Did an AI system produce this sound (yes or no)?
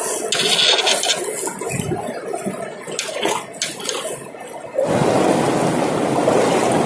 no